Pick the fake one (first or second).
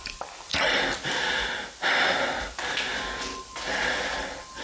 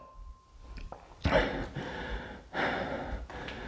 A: second